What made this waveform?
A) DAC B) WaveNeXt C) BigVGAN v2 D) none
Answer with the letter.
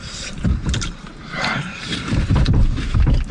C